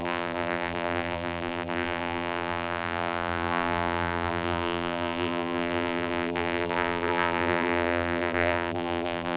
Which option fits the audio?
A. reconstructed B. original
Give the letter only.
A